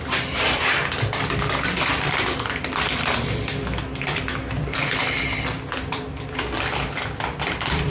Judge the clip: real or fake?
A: fake